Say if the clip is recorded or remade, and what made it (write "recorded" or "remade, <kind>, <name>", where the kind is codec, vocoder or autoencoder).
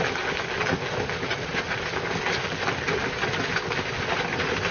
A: recorded